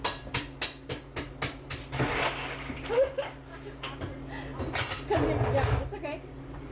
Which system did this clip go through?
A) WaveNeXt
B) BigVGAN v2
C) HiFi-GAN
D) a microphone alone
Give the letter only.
D